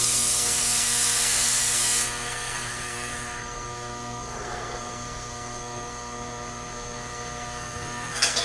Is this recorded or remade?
remade